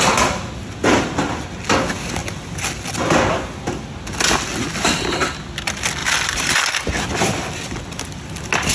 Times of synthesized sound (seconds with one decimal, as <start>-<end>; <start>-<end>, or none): 6.0-6.8